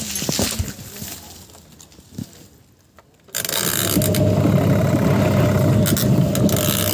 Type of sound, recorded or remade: recorded